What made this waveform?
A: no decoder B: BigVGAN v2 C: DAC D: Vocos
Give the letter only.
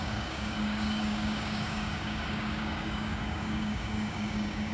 C